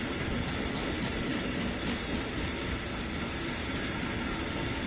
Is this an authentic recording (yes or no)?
yes